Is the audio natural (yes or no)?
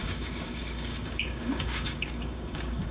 no